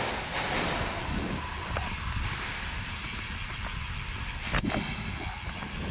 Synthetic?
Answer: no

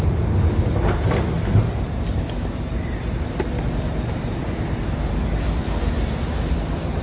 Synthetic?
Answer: no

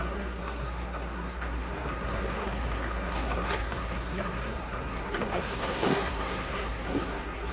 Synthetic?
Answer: yes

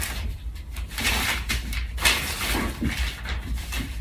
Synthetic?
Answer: no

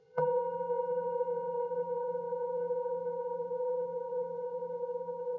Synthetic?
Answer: yes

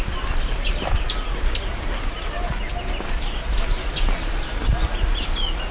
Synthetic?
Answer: no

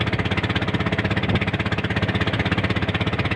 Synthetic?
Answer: no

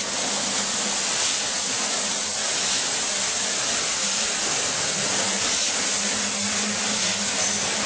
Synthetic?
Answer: no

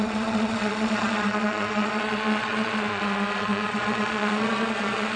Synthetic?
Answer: yes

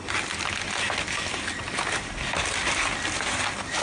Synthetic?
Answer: no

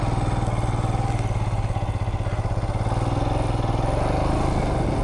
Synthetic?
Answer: no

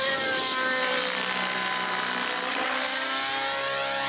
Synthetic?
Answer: no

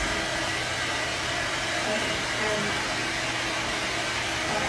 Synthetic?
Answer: no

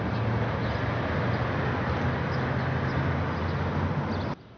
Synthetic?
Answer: no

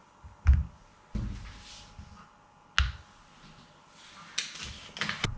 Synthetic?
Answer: no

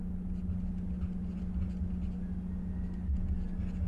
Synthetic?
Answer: no